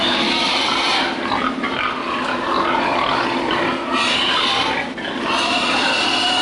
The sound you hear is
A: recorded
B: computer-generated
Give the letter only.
A